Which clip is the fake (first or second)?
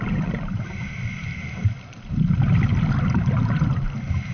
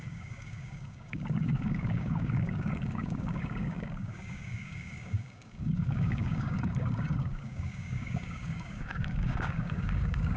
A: second